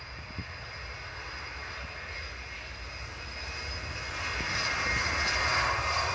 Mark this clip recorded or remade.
recorded